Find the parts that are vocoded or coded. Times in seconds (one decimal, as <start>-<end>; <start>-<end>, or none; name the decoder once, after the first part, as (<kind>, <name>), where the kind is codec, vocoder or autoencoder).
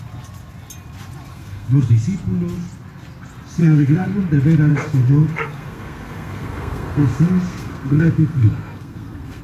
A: 1.3-1.9 (codec, SNAC); 3.6-4.2; 4.7-9.4